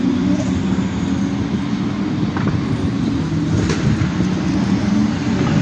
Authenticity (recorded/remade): recorded